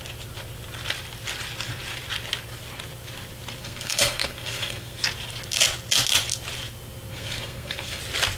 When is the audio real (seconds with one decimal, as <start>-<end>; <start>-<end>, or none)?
0.0-3.6; 5.0-7.1; 8.0-8.4